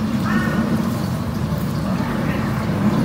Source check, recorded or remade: recorded